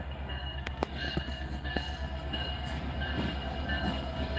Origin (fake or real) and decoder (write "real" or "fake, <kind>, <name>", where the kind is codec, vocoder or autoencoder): fake, codec, SNAC